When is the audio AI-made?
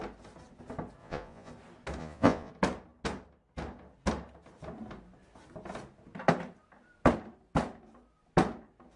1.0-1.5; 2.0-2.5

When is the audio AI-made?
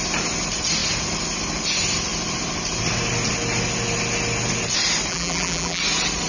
5.1-5.8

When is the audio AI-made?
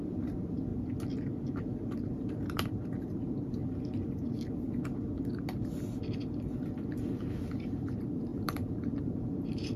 0.0-0.7; 1.6-3.6; 7.4-9.8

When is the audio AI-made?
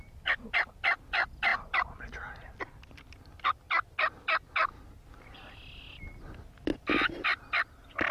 1.5-3.1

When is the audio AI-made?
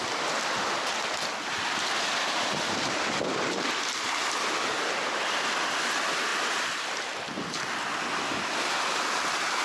none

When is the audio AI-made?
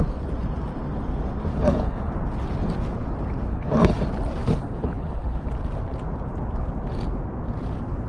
1.5-2.1; 3.5-4.0; 4.4-5.5